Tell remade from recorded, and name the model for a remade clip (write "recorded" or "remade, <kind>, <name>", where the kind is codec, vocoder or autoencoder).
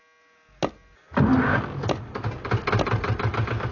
recorded